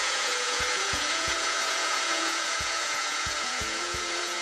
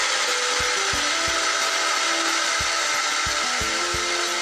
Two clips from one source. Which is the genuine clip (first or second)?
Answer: second